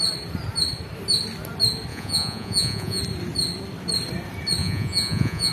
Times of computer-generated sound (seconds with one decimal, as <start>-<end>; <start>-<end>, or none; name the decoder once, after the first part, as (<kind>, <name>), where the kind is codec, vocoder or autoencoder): 1.9-3.0 (vocoder, Vocos); 4.6-5.5